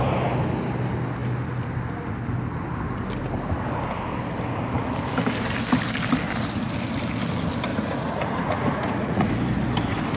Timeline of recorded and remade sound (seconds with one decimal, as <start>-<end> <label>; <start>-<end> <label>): 0.0-7.7 recorded; 7.7-9.3 remade; 9.3-10.2 recorded